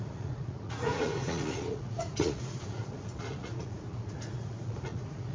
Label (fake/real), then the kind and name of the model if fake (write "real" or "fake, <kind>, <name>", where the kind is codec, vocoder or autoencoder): fake, vocoder, Vocos